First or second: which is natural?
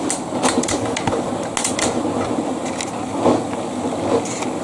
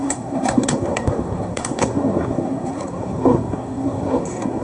first